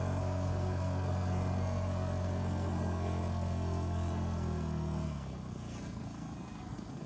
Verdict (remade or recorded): remade